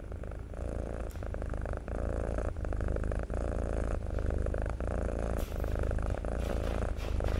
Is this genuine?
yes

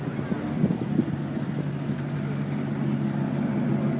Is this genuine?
yes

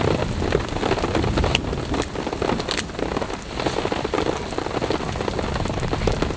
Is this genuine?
yes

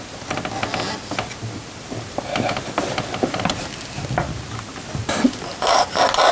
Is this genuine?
yes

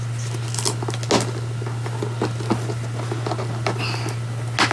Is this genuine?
yes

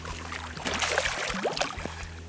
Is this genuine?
yes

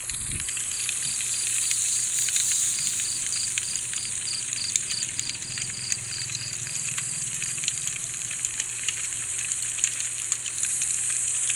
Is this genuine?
no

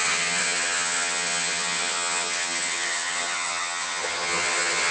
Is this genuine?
no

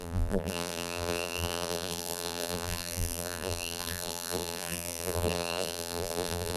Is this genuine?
no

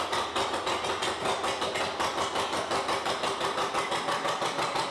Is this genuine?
yes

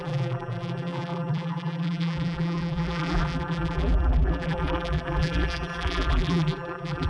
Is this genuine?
no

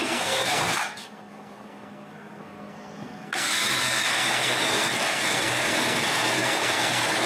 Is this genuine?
no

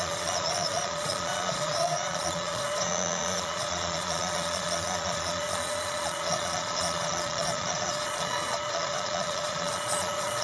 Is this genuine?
no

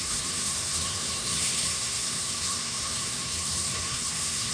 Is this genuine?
no